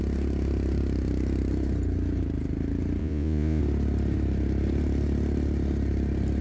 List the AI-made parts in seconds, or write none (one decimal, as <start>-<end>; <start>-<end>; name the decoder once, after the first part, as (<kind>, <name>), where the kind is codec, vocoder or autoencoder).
3.0-3.6 (vocoder, Vocos)